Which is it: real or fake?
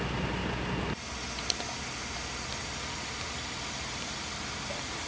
real